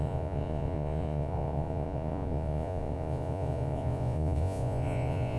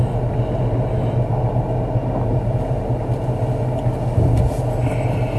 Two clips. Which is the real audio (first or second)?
second